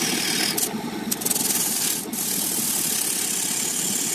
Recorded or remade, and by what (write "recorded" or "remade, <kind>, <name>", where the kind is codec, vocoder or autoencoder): recorded